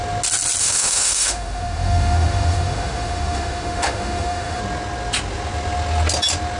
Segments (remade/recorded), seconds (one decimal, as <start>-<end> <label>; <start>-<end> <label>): 0.0-0.6 recorded; 0.6-4.6 remade; 4.6-6.6 recorded